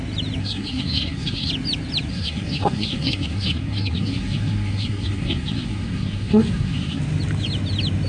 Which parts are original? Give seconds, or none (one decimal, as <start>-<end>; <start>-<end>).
0.0-0.4; 1.5-2.1; 7.0-8.1